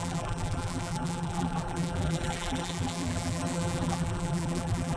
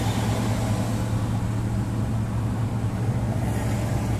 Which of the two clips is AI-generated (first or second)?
first